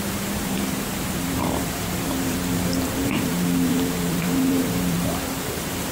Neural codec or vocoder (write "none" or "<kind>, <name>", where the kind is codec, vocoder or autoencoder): vocoder, BigVGAN v2